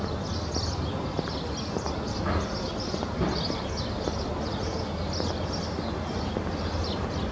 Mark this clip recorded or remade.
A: recorded